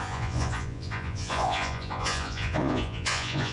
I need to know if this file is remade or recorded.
remade